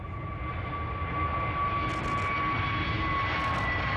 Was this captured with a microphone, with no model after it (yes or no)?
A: yes